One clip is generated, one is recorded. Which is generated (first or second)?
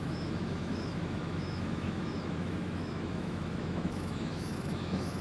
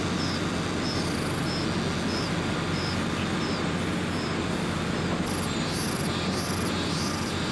first